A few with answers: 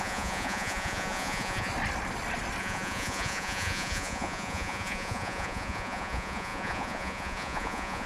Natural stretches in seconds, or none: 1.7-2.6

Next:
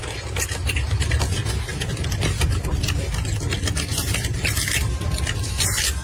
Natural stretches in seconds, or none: 0.0-3.9; 5.2-6.0

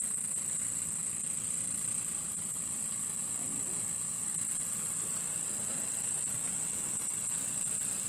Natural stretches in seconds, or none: 0.0-1.0; 3.2-4.3; 6.5-8.1

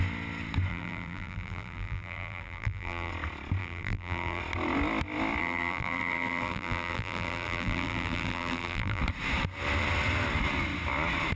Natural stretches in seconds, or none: 0.0-0.7; 3.1-3.6; 4.4-5.4; 9.0-11.4

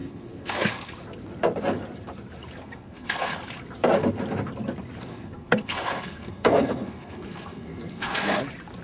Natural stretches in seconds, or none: 0.9-2.6; 3.4-5.1; 8.4-8.8

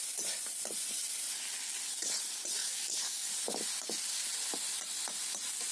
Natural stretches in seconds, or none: 0.0-2.6; 3.3-5.7